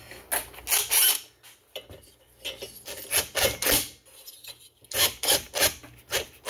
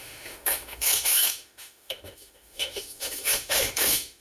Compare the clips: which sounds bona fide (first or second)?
first